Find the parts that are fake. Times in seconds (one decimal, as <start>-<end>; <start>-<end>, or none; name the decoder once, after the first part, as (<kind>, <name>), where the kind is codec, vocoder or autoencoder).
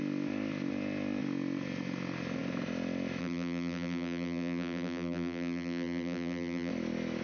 3.2-6.7 (vocoder, BigVGAN v2)